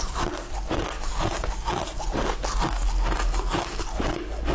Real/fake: real